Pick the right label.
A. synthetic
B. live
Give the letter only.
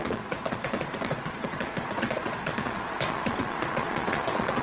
A